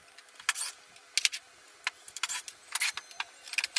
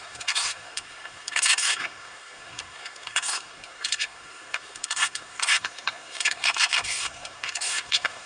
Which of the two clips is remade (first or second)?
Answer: second